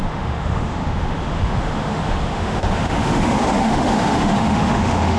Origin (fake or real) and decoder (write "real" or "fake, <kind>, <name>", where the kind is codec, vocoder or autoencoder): fake, autoencoder, DAC-VAE